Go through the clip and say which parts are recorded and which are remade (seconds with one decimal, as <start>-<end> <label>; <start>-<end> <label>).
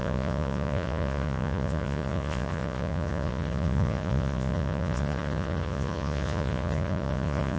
0.0-7.6 remade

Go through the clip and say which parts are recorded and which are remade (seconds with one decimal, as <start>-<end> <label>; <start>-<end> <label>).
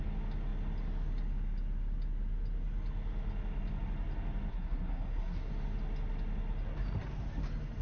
0.0-4.5 recorded; 4.5-5.5 remade; 5.5-7.8 recorded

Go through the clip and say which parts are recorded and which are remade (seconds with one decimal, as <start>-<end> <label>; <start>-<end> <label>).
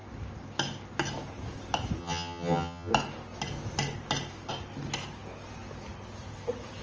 0.0-2.0 recorded; 2.0-2.9 remade; 2.9-6.8 recorded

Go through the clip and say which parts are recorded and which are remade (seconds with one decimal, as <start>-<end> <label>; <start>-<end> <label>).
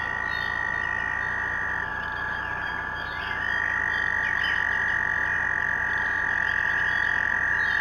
0.0-1.9 recorded; 1.9-3.2 remade; 3.2-7.8 recorded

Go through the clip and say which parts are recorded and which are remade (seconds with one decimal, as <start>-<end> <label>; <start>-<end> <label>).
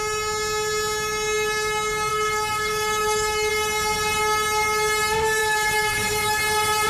0.0-2.1 recorded; 2.1-3.5 remade; 3.5-5.4 recorded; 5.4-6.4 remade; 6.4-6.9 recorded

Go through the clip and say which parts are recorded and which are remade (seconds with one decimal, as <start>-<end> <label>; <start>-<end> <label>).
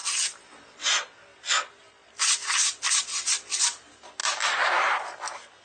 0.0-0.5 remade; 0.5-1.3 recorded; 1.3-1.8 remade; 1.8-4.2 recorded; 4.2-5.0 remade; 5.0-5.6 recorded